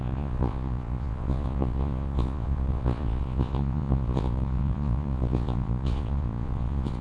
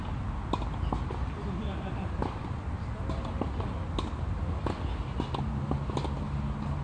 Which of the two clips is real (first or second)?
second